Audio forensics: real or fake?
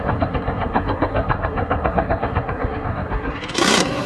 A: fake